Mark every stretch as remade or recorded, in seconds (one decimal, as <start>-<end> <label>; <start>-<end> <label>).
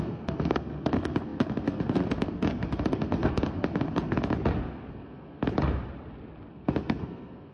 0.0-4.2 remade; 4.2-4.9 recorded; 4.9-5.4 remade; 5.4-6.5 recorded; 6.5-7.5 remade